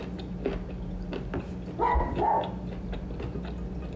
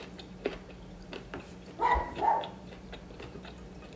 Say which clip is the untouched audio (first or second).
first